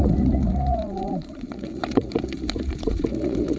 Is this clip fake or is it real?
fake